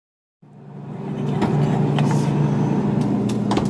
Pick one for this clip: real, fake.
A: real